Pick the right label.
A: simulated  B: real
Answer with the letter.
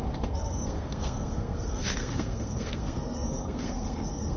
A